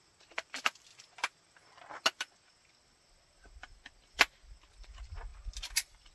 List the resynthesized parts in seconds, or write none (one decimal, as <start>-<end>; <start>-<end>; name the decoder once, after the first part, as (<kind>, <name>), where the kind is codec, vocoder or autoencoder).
0.0-0.9 (vocoder, BigVGAN v2); 2.7-6.1